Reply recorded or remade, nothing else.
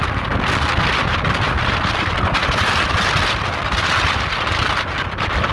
recorded